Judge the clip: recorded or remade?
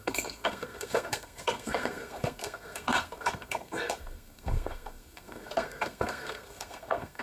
remade